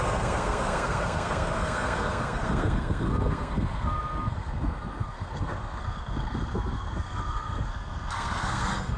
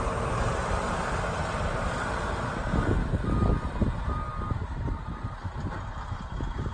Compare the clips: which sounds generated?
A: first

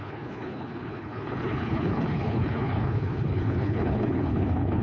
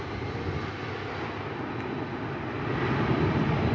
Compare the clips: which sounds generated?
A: first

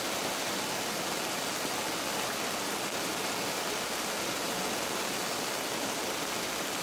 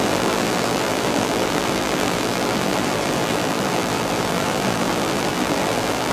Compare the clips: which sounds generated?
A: second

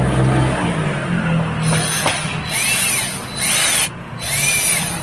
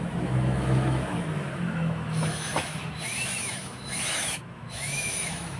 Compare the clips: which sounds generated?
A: second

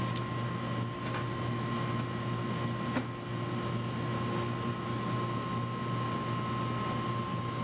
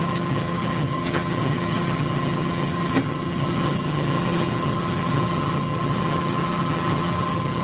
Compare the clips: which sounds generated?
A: second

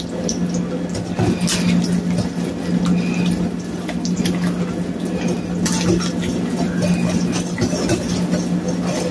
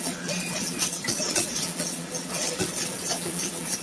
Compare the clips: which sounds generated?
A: second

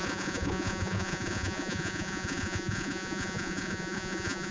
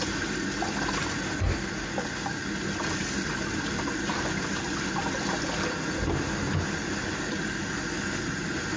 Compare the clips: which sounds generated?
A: first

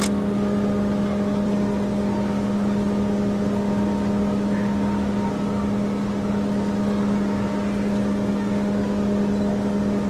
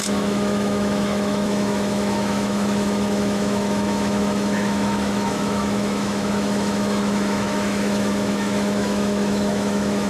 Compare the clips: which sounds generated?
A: second